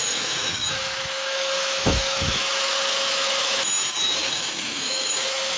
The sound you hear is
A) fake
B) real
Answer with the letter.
A